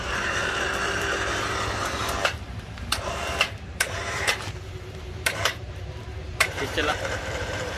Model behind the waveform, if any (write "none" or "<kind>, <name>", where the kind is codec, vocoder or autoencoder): vocoder, BigVGAN v2